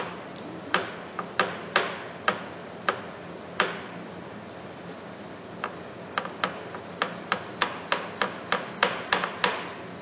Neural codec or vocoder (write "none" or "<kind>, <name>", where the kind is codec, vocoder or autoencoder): none